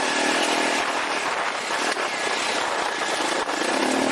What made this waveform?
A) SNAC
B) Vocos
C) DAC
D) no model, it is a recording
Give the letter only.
D